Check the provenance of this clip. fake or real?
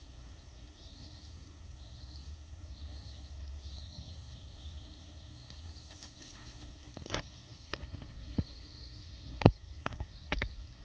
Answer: fake